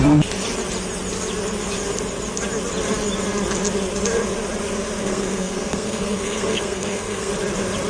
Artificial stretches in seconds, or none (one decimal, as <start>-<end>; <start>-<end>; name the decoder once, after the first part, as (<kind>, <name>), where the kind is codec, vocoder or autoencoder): 5.0-7.3 (codec, SNAC)